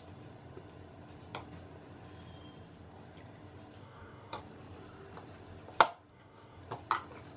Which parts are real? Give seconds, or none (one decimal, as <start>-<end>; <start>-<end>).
0.0-3.8; 4.4-6.1; 6.6-7.4